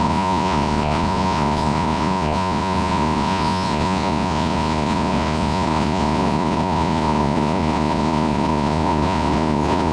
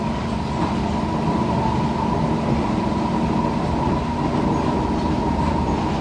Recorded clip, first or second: second